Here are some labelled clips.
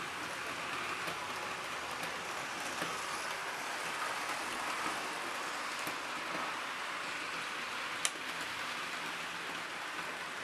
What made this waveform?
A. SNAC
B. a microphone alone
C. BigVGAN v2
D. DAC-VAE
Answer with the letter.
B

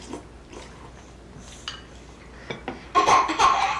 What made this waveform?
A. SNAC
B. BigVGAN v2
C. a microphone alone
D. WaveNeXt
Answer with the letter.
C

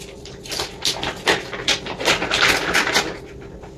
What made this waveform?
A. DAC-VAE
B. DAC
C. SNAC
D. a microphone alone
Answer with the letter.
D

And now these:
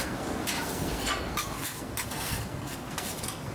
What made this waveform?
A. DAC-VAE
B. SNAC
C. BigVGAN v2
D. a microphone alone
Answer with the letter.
B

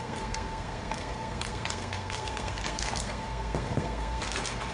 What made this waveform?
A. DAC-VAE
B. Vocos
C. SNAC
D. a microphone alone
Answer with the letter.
C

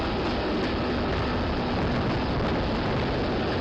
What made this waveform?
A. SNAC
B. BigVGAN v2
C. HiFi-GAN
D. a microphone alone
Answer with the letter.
D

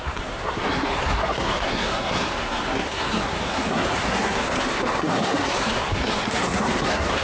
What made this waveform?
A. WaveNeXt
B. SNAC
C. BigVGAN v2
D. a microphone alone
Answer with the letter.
B